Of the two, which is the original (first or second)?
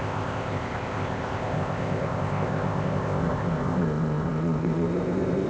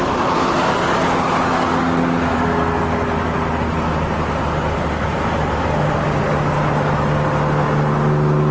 second